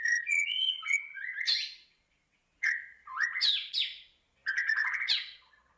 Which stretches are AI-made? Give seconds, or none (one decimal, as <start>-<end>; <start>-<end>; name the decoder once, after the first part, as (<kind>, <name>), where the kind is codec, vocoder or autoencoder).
0.0-5.8 (vocoder, Vocos)